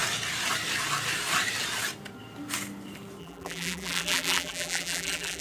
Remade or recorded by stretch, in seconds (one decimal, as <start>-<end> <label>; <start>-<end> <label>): 0.0-3.2 recorded; 3.2-5.4 remade